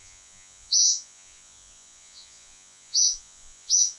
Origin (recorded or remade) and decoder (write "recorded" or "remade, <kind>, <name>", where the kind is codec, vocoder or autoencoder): remade, vocoder, Vocos